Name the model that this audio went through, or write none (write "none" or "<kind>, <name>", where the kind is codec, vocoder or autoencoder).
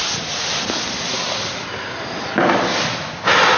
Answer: none